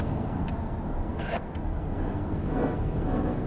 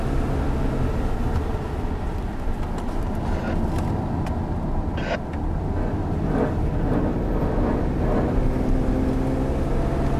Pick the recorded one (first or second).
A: second